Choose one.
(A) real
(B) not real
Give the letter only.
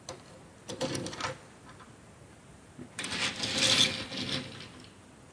A